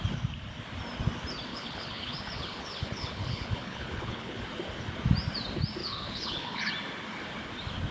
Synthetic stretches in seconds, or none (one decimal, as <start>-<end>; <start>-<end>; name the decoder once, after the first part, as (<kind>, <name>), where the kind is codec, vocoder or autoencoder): 1.5-4.4 (codec, HILCodec); 5.8-6.7